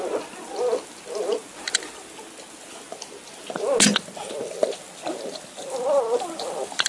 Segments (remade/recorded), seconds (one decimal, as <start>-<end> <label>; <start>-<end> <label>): 0.0-6.9 recorded